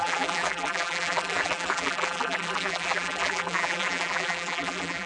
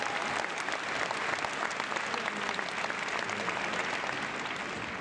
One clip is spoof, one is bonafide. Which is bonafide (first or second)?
second